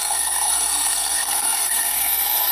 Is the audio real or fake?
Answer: fake